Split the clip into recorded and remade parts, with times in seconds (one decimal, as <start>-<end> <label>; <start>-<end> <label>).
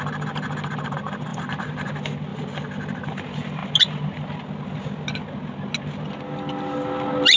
0.0-1.3 recorded; 1.3-1.9 remade; 1.9-2.3 recorded; 2.3-3.0 remade; 3.0-7.4 recorded